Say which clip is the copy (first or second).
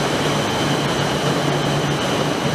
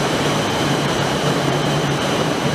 second